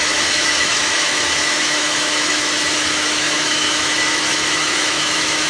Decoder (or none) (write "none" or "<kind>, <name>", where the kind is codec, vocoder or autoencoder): autoencoder, DAC-VAE